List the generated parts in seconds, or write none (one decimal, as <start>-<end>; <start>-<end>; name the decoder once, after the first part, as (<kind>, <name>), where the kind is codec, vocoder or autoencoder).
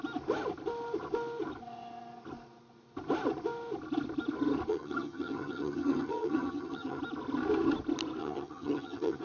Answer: 4.7-7.0 (vocoder, HiFi-GAN); 8.2-9.2